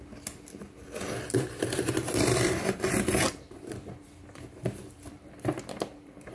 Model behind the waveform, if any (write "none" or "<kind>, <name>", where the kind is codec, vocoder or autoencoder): vocoder, BigVGAN v2